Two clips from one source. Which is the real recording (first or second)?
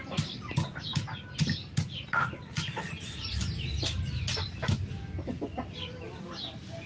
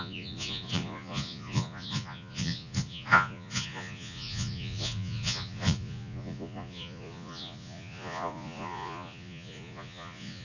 first